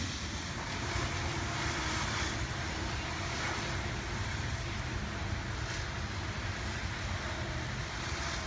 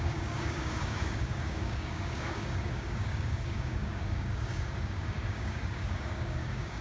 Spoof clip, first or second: second